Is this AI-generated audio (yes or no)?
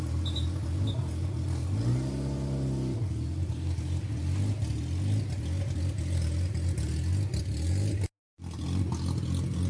no